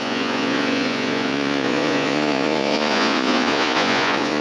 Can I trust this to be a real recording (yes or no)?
no